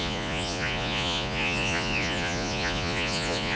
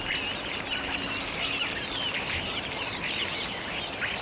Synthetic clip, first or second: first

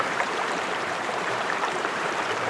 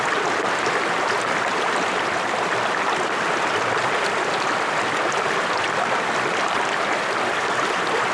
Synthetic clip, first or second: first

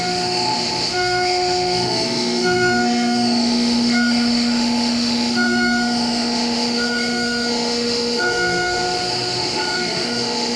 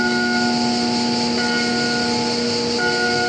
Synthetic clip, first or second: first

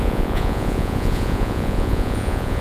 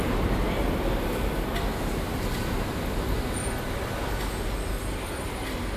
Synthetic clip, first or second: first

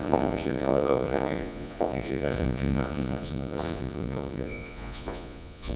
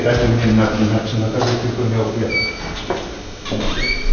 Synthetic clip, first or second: first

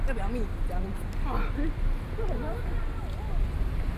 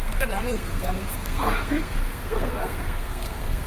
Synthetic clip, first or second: second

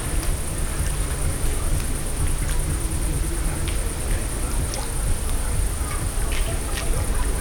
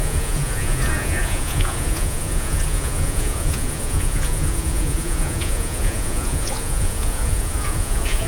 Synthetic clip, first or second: second